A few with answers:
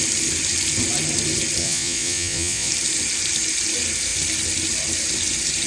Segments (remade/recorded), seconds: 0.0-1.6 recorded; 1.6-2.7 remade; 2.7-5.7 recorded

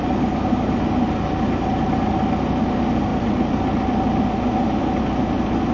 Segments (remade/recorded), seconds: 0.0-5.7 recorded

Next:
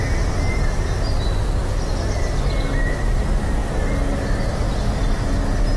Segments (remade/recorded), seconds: 0.0-5.8 recorded

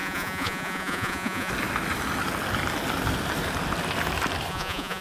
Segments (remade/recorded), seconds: 0.0-1.5 remade; 1.5-4.5 recorded; 4.5-5.0 remade